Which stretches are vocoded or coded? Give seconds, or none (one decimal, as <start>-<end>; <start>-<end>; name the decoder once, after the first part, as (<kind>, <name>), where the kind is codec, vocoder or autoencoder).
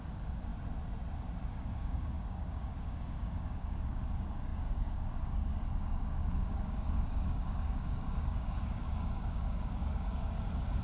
0.0-0.5 (codec, DAC); 1.5-10.8